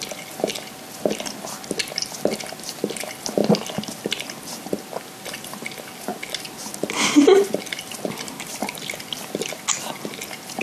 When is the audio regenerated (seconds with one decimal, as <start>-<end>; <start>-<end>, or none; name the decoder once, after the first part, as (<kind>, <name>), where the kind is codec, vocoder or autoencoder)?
none